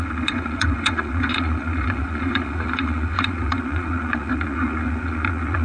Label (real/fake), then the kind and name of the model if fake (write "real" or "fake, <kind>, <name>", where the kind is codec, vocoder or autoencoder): fake, vocoder, Vocos